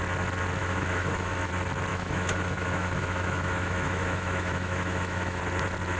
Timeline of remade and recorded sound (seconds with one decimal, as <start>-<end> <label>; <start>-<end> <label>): 0.0-0.6 recorded; 0.6-1.5 remade; 1.5-1.9 recorded; 1.9-5.4 remade; 5.4-6.0 recorded